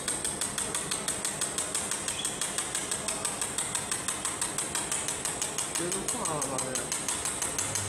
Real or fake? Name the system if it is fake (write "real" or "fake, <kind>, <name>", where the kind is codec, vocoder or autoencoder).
real